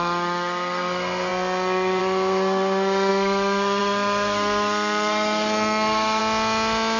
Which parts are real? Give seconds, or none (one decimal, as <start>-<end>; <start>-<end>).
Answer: 6.2-7.0